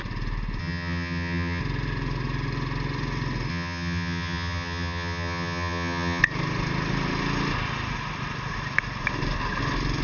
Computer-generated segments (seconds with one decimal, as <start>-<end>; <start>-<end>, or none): 0.6-1.6; 3.5-6.2